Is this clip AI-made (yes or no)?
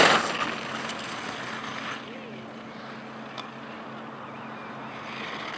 no